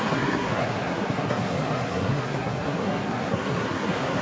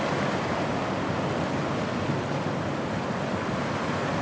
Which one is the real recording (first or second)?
second